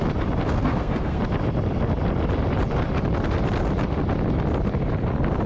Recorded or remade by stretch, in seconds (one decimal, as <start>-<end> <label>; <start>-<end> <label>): 0.0-0.4 recorded; 0.4-1.2 remade; 1.2-5.5 recorded